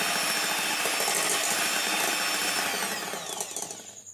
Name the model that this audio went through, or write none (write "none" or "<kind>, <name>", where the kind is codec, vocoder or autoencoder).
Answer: none